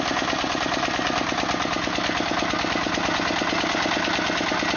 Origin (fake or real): real